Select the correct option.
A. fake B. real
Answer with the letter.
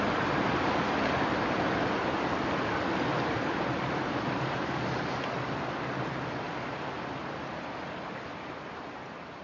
B